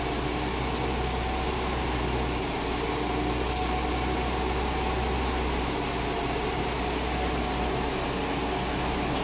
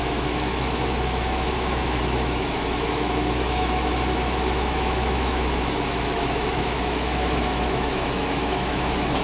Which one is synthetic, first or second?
second